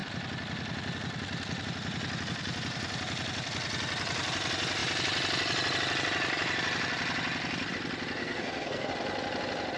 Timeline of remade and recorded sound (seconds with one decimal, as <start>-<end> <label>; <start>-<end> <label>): 0.0-8.2 recorded; 8.2-8.9 remade; 8.9-9.8 recorded